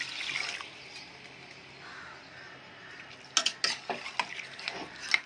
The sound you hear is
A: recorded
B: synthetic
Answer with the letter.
A